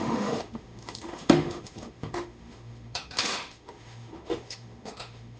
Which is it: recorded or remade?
remade